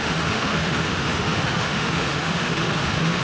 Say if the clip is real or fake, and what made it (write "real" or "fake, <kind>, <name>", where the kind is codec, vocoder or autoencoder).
fake, autoencoder, DAC-VAE